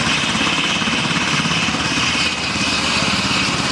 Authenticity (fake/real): fake